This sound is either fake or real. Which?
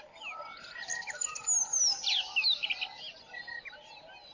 real